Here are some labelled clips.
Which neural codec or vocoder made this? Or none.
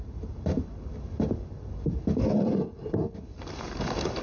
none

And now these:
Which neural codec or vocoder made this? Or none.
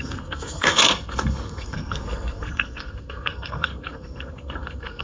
codec, SNAC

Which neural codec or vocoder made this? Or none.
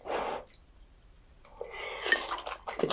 none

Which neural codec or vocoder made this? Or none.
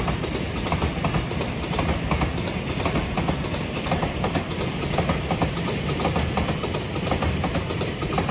none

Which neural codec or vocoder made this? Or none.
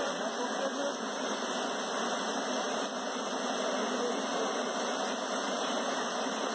none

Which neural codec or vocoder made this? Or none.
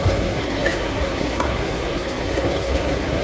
codec, SNAC